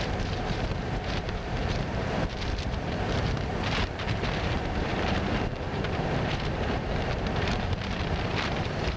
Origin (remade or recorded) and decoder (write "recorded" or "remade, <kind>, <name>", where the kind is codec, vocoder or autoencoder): remade, vocoder, BigVGAN v2